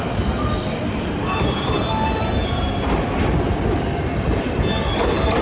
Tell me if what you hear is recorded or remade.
remade